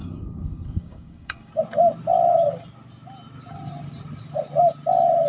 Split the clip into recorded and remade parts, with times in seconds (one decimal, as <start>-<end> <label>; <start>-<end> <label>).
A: 0.0-1.5 remade; 1.5-5.3 recorded